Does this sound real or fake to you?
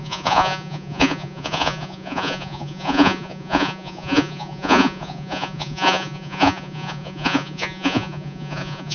fake